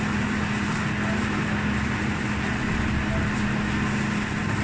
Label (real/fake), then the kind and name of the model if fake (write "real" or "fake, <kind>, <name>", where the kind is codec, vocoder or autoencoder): real